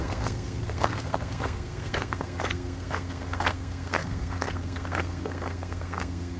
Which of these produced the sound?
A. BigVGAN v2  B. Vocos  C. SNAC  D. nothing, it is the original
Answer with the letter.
C